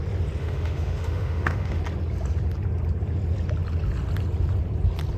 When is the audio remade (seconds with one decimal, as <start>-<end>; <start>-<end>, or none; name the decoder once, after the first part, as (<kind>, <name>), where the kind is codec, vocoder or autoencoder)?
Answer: 0.4-1.8 (autoencoder, DAC-VAE)